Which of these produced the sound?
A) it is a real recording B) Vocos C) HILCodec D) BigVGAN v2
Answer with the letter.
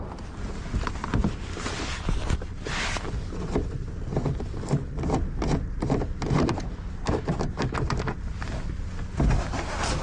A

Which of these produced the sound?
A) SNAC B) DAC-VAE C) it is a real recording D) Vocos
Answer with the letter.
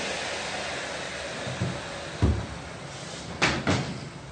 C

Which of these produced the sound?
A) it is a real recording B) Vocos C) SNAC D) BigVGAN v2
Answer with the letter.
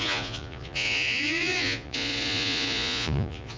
B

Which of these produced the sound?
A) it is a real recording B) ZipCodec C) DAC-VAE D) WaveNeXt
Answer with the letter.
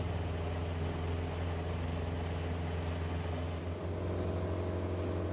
A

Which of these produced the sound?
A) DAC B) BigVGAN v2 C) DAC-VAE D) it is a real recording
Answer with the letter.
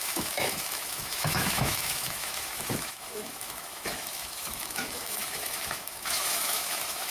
C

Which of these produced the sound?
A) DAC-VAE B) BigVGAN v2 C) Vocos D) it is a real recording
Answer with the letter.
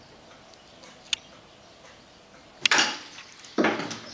D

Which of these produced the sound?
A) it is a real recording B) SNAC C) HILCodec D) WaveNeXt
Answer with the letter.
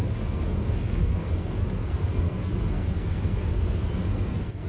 B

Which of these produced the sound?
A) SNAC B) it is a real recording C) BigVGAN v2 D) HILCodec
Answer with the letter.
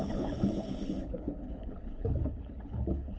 D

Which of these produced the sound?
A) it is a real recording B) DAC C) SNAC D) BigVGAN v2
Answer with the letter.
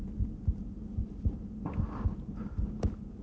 A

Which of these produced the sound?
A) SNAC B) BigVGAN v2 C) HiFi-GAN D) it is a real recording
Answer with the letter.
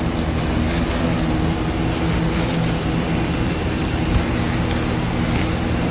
D